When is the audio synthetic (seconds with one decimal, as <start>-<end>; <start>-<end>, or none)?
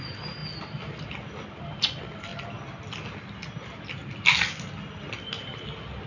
none